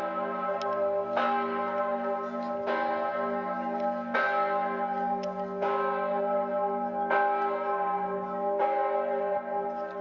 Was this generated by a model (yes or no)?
no